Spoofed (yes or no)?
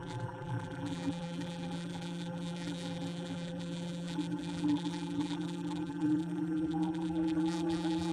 yes